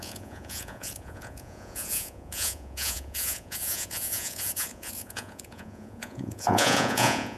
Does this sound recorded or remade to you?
remade